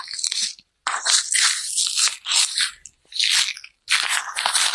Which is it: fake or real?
real